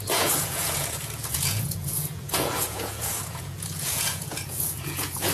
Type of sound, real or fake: fake